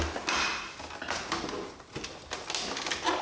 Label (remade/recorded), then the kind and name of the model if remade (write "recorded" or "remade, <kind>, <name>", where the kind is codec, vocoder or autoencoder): recorded